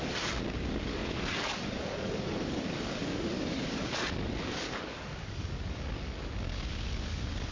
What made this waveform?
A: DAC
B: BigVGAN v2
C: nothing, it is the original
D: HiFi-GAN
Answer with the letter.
A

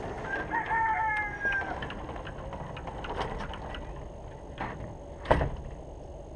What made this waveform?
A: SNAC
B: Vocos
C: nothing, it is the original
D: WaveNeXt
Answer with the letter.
C